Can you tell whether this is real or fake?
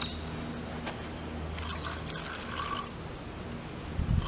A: real